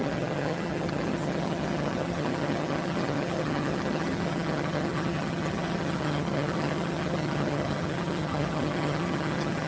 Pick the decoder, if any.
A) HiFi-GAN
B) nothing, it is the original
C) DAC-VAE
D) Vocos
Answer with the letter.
A